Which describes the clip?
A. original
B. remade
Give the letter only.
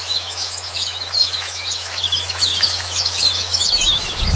B